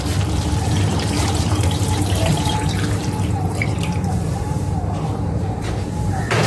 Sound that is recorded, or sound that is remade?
remade